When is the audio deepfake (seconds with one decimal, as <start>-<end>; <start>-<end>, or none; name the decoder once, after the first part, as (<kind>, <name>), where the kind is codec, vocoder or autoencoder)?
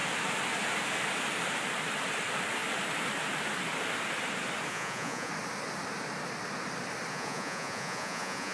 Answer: 4.7-5.3 (vocoder, Vocos); 7.1-8.5